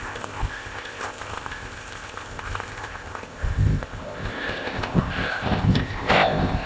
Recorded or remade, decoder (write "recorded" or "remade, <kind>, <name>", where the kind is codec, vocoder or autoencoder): remade, codec, ZipCodec